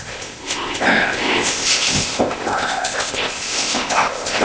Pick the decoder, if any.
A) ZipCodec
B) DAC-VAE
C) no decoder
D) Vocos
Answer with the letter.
A